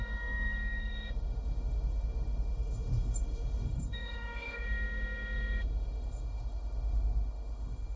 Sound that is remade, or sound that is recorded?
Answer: remade